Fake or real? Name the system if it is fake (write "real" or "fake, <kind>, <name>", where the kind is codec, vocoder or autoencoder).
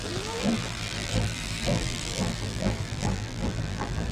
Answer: fake, vocoder, BigVGAN v2